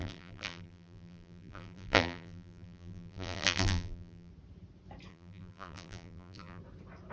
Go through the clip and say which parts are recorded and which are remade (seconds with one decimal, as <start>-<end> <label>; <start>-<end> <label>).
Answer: 0.0-4.3 remade; 4.3-5.1 recorded; 5.1-6.6 remade; 6.6-7.1 recorded

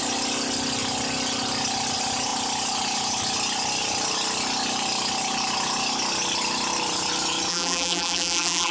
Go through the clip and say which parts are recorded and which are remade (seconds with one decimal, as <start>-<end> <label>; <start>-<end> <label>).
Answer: 0.0-7.5 recorded; 7.5-8.7 remade